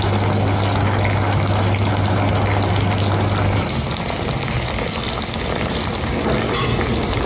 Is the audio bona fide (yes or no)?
yes